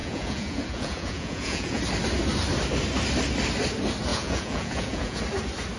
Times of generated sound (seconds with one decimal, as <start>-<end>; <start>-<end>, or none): 0.0-1.8; 4.1-5.2